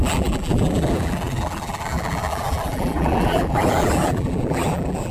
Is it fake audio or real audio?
fake